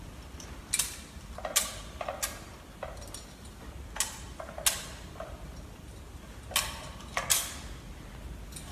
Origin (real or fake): real